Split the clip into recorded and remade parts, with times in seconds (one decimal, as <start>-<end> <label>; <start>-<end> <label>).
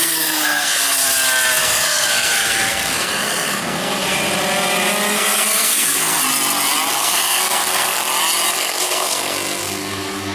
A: 0.0-1.0 remade; 1.0-1.6 recorded; 1.6-4.2 remade; 4.2-5.1 recorded; 5.1-6.2 remade; 6.2-6.9 recorded; 6.9-8.0 remade; 8.0-8.5 recorded; 8.5-10.3 remade